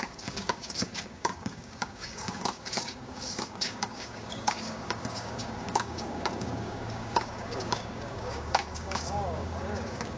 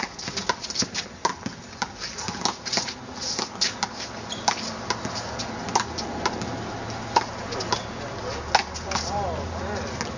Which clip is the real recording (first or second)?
second